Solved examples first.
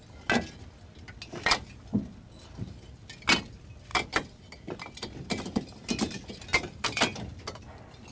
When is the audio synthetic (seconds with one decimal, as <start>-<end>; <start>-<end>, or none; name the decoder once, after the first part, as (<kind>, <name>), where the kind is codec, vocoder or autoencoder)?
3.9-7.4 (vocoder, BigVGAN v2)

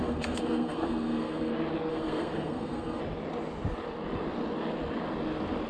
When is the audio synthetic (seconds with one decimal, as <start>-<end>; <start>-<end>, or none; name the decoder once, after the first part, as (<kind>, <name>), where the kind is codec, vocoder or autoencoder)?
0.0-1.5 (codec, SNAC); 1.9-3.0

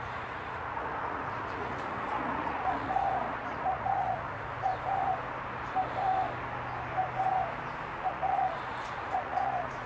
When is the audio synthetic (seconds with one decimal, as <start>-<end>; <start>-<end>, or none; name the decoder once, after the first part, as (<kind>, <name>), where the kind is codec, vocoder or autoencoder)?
0.0-4.7 (vocoder, Vocos); 8.1-9.9

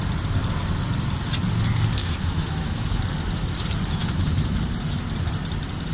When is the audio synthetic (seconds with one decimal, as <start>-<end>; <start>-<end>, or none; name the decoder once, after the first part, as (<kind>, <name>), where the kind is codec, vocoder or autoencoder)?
2.0-3.0 (autoencoder, DAC-VAE); 4.0-4.6

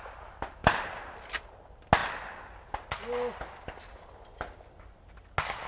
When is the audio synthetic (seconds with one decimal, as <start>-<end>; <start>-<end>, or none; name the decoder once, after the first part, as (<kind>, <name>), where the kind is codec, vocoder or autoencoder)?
0.6-1.6 (vocoder, BigVGAN v2)

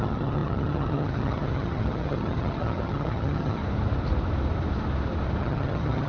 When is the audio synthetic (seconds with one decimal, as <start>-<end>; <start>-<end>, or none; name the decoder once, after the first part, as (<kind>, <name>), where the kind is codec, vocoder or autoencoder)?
0.0-3.6 (vocoder, HiFi-GAN); 5.4-6.1